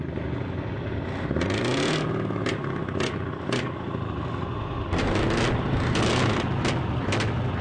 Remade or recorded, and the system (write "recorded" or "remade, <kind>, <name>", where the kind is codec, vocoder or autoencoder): recorded